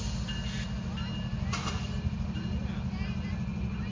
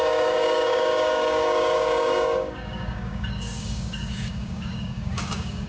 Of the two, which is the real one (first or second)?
first